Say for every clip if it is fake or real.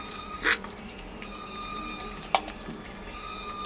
real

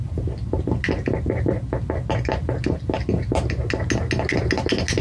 real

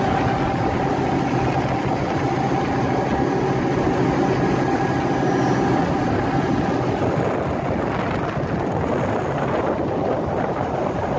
real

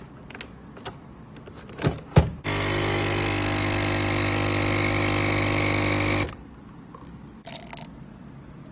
real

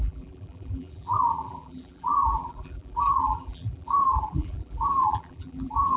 fake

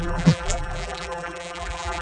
fake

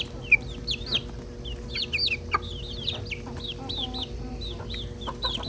real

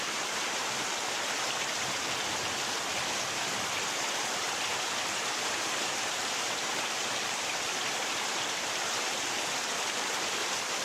fake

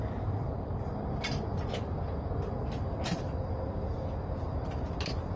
real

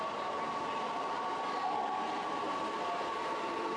real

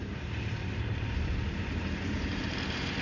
fake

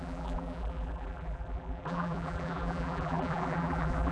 fake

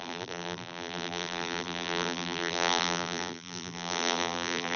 fake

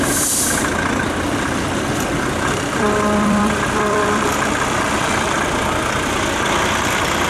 fake